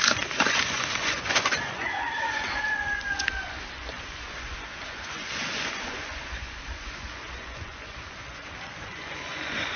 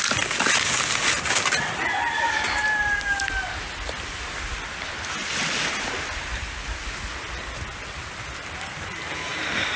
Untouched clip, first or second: second